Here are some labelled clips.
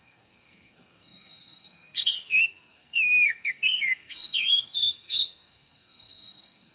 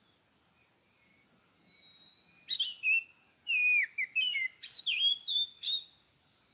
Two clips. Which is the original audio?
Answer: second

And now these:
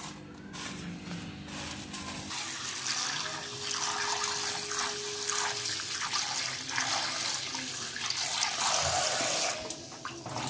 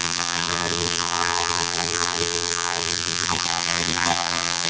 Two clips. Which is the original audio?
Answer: first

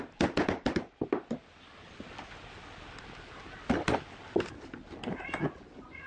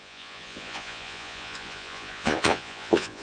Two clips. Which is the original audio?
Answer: first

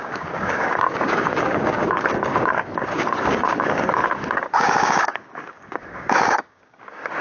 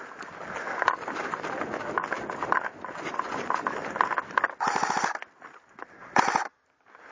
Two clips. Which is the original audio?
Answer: second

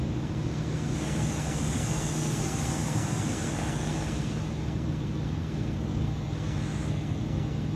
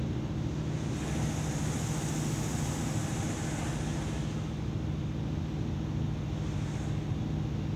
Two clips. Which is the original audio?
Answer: second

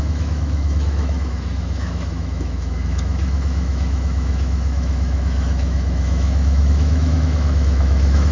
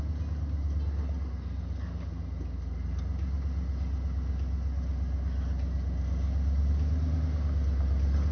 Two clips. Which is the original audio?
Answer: second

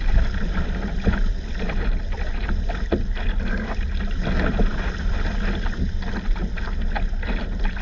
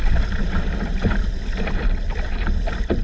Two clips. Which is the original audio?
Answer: first